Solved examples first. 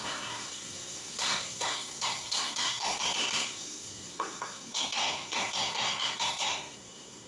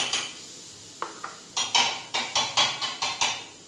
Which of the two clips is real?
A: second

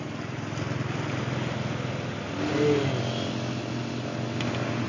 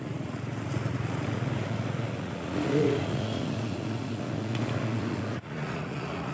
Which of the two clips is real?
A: first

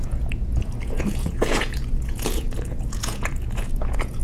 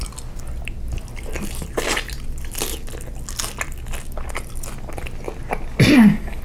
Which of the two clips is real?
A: second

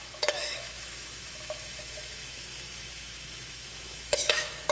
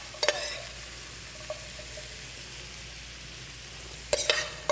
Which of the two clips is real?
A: second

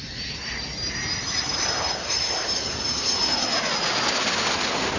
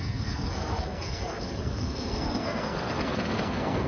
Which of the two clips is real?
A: first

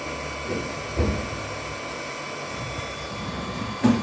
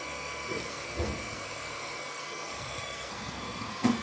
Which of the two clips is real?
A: first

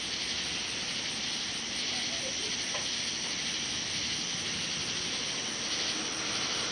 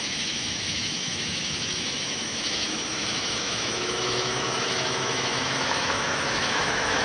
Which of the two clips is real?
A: first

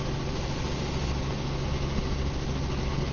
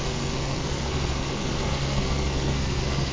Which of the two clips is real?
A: first